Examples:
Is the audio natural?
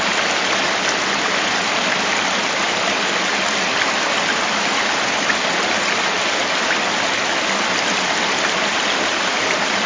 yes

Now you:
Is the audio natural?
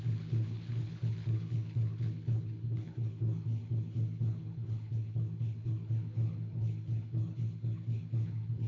no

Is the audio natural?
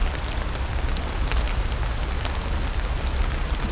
yes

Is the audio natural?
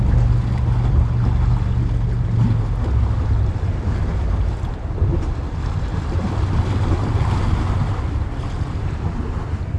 yes